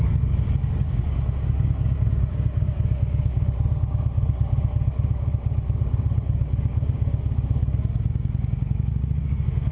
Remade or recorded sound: remade